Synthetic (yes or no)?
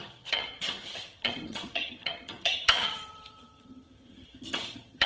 yes